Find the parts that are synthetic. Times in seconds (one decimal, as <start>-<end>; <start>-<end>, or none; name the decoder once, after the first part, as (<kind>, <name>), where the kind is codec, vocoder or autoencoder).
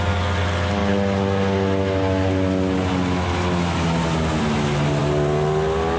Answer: none